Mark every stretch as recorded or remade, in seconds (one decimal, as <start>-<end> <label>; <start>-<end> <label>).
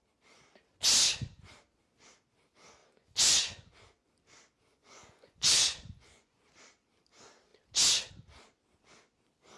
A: 0.0-2.8 recorded; 2.8-3.7 remade; 3.7-4.7 recorded; 4.7-6.4 remade; 6.4-9.6 recorded